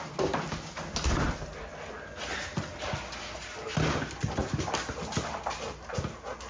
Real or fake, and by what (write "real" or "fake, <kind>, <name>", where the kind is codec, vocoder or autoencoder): real